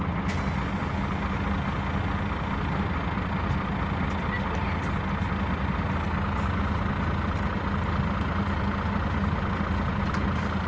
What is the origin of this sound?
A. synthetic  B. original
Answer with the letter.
B